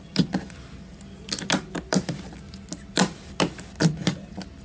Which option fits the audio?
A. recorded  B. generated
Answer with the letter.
A